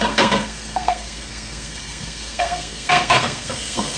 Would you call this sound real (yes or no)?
no